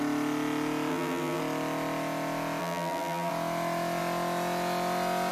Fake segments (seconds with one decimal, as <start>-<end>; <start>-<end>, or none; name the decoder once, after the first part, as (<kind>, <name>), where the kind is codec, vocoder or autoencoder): 0.9-1.4 (vocoder, BigVGAN v2); 2.6-3.3